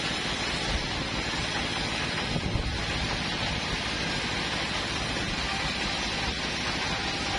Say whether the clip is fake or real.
real